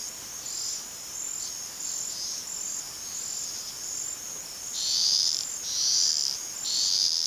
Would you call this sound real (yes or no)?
no